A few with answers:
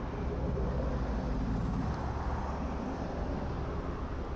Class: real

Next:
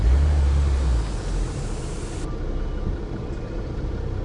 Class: real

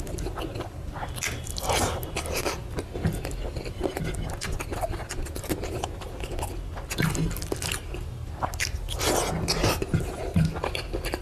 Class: real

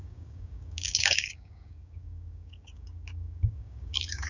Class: fake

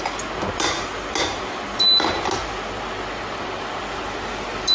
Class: real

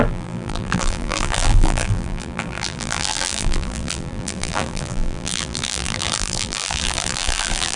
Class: fake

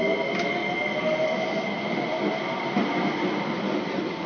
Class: real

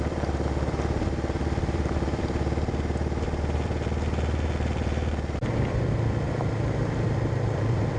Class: fake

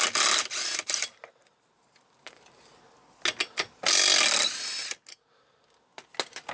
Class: real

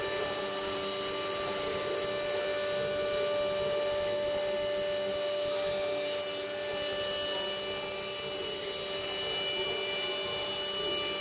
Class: real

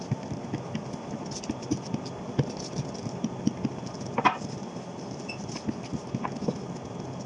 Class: real